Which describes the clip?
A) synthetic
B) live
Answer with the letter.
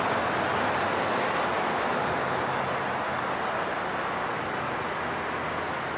B